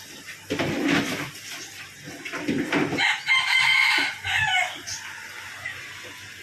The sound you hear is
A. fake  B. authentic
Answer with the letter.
B